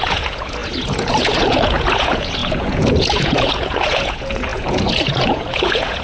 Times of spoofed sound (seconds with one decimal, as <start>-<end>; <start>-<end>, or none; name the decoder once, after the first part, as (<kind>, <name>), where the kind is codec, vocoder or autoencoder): 0.0-6.0 (vocoder, Vocos)